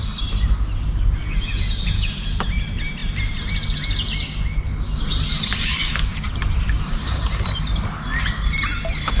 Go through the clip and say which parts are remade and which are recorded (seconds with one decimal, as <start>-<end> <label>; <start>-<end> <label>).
0.0-1.2 recorded; 1.2-2.5 remade; 2.5-9.2 recorded